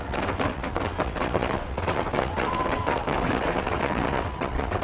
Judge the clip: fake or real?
fake